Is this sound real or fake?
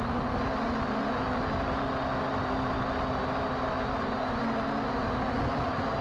real